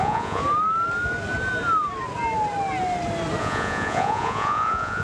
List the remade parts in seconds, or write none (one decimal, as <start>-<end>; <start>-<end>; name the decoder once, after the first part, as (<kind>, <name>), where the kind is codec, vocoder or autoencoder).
0.0-0.4 (vocoder, Vocos); 3.4-5.0